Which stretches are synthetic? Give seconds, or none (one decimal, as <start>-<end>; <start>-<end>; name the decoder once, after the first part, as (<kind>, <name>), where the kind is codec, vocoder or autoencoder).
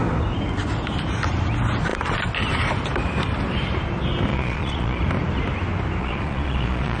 4.3-5.0 (vocoder, Vocos); 6.0-7.0